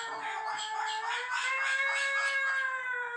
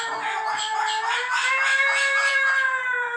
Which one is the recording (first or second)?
first